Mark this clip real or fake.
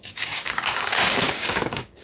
fake